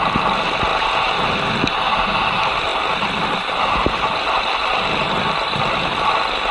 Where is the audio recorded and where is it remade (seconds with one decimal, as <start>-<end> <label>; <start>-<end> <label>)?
0.0-0.7 recorded; 0.7-1.2 remade; 1.2-6.5 recorded